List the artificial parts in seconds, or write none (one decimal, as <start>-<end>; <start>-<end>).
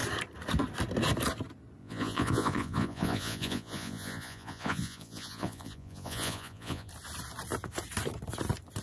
1.8-6.9